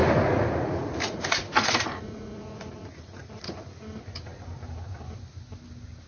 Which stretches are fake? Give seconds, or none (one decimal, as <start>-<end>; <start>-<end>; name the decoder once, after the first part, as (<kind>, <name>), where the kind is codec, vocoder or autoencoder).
0.0-3.7 (vocoder, Vocos)